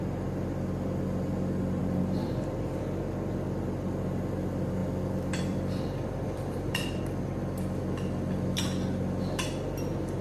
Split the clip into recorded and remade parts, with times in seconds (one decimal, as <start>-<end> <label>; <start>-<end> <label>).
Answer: 0.0-1.8 recorded; 1.8-2.8 remade; 2.8-4.8 recorded; 4.8-7.0 remade; 7.0-10.2 recorded